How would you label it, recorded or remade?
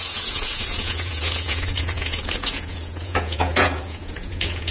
remade